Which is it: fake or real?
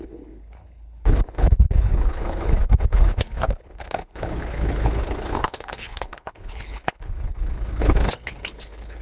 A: fake